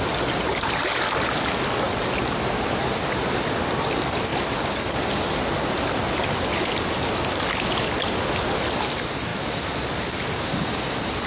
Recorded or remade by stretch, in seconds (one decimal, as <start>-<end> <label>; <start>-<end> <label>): 0.0-11.3 recorded